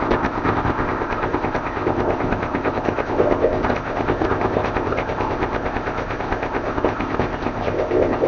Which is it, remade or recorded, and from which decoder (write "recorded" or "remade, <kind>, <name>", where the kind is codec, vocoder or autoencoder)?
remade, codec, ZipCodec